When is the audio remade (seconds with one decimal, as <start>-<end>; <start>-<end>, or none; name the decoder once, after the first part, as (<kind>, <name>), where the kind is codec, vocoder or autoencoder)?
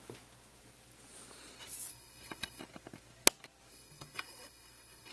1.9-2.6 (codec, DAC); 3.7-5.1